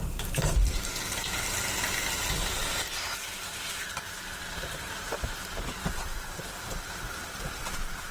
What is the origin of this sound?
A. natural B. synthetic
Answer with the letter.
B